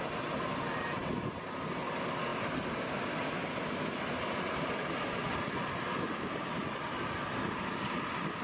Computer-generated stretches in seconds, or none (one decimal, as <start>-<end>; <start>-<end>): none